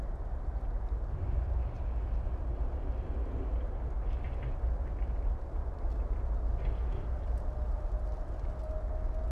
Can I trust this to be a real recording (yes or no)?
yes